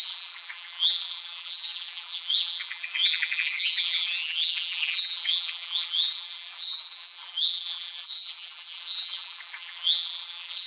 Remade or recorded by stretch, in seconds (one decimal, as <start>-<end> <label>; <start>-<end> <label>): 0.0-10.7 remade